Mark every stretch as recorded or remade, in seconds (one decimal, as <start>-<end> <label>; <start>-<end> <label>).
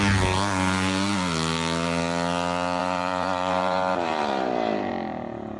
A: 0.0-2.8 recorded; 2.8-4.9 remade; 4.9-5.6 recorded